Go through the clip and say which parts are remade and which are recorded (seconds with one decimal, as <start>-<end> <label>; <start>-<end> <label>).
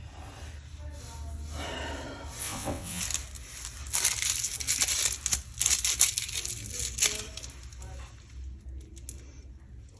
0.0-2.4 recorded; 2.4-3.0 remade; 3.0-10.0 recorded